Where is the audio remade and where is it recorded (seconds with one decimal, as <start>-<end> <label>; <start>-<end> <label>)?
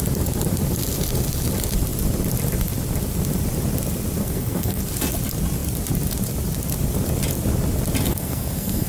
0.0-4.2 recorded; 4.2-4.8 remade; 4.8-8.1 recorded; 8.1-8.9 remade